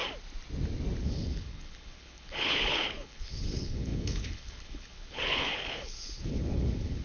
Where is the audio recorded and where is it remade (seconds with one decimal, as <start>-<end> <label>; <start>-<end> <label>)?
0.0-1.0 recorded; 1.0-7.0 remade